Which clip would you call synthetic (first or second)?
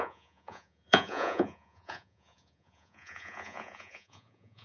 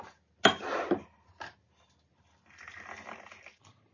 first